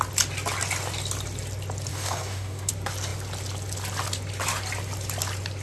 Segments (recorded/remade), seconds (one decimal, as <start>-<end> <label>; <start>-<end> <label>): 0.0-1.9 recorded; 1.9-2.7 remade; 2.7-5.6 recorded